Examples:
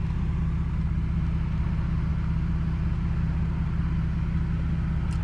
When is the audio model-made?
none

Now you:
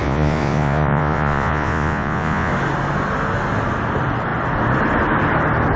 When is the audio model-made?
0.0-2.5 (vocoder, Vocos)

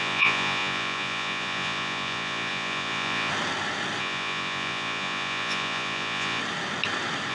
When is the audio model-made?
0.0-3.3 (vocoder, Vocos); 4.0-6.4